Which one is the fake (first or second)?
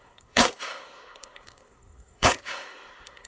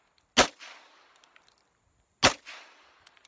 first